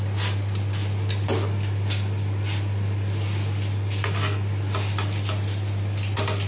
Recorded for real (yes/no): yes